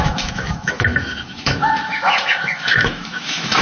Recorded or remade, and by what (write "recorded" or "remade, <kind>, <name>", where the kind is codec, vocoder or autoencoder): remade, autoencoder, DAC-VAE